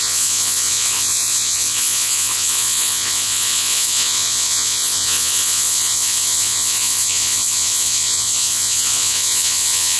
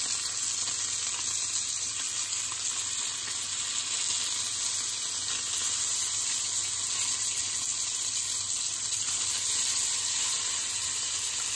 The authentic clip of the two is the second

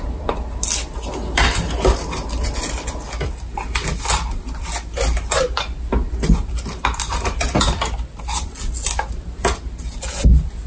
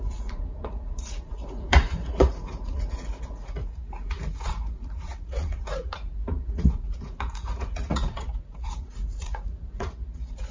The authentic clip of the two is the first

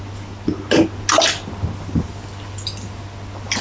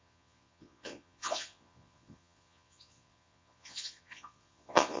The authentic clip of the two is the first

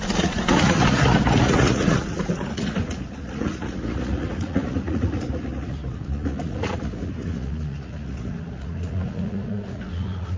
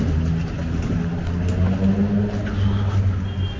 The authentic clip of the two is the second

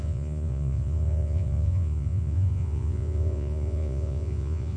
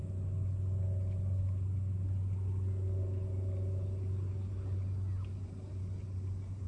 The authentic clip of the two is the second